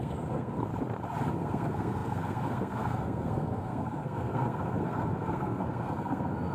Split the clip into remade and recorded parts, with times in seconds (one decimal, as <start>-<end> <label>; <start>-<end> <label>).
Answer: 0.0-0.7 remade; 0.7-1.3 recorded; 1.3-6.5 remade